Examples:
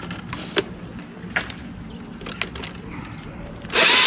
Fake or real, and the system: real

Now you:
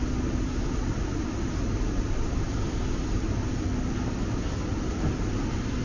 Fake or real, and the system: real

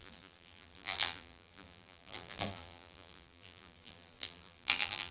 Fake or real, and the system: fake, vocoder, BigVGAN v2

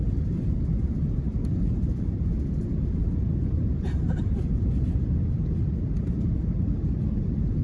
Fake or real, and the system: fake, vocoder, BigVGAN v2